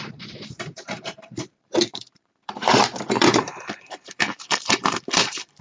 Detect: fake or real fake